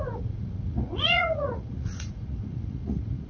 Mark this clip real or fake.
fake